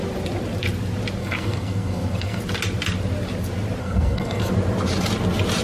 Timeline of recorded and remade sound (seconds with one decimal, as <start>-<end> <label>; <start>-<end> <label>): 0.0-1.2 recorded; 1.2-2.4 remade; 2.4-3.8 recorded; 3.8-4.5 remade; 4.5-5.6 recorded